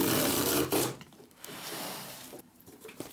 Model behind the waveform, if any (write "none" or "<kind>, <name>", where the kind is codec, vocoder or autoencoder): vocoder, BigVGAN v2